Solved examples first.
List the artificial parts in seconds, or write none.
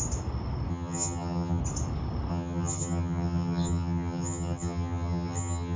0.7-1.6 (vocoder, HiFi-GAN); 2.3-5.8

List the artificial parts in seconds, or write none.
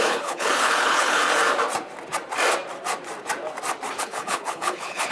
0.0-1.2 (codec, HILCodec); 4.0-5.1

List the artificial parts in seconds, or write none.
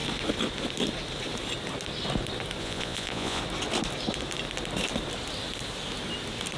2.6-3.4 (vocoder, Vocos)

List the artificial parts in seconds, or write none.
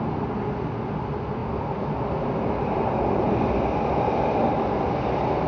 none